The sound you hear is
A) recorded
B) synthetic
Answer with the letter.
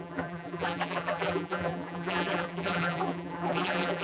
B